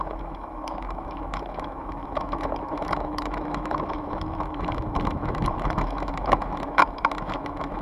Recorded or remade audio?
remade